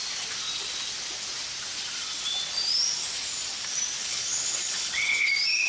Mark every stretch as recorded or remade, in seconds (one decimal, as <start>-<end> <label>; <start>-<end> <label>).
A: 0.0-4.0 recorded; 4.0-5.3 remade; 5.3-5.7 recorded